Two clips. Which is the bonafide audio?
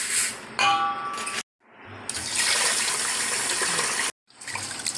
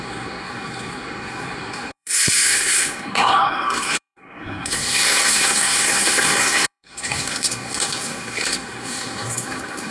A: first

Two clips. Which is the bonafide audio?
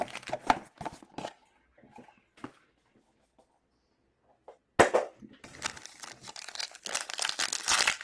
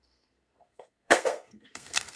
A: first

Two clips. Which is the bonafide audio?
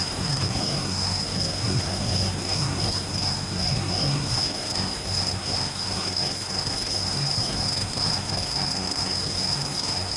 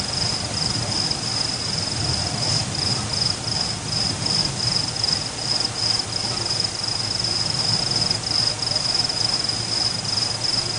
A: second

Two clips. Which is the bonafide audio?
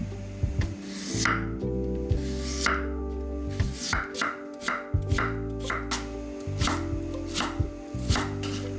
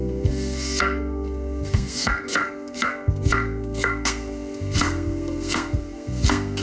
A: first